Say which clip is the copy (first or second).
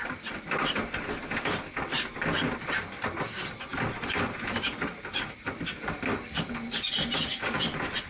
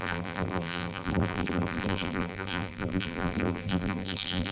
second